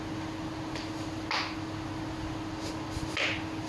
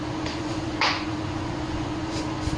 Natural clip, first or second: first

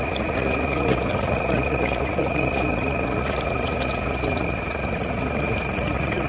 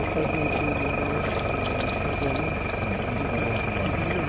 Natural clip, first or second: second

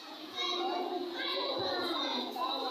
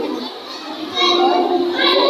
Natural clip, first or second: second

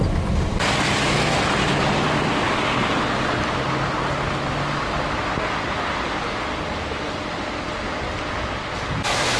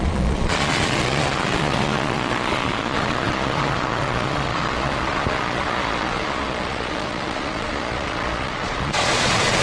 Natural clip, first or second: first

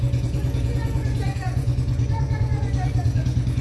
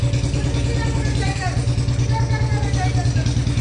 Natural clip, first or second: second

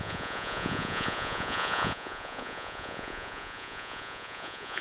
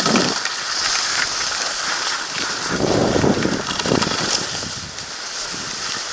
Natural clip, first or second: second